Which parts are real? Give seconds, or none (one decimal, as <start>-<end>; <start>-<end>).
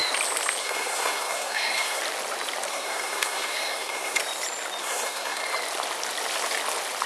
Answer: 0.0-0.6; 2.0-2.7; 4.2-4.8; 5.4-7.1